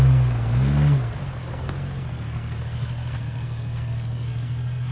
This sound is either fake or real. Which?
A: fake